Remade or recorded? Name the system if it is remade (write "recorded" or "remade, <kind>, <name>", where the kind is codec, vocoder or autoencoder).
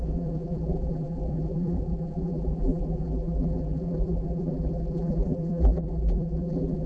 remade, vocoder, BigVGAN v2